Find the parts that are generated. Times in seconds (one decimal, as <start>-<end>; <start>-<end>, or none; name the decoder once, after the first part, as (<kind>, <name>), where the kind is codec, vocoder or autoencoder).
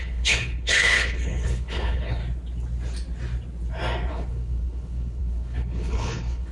0.0-2.2 (codec, HILCodec); 4.1-6.5